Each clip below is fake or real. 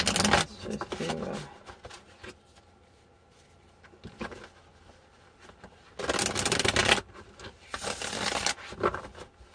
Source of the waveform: real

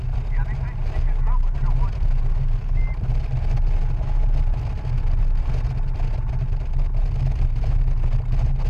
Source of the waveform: real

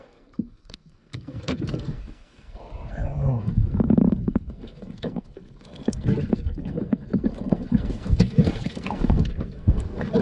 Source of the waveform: fake